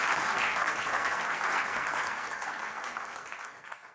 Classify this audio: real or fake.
fake